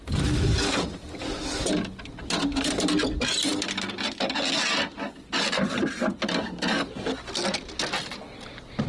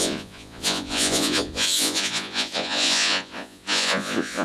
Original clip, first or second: first